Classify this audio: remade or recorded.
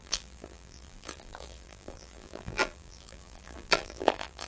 remade